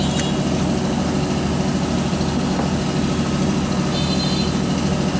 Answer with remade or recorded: recorded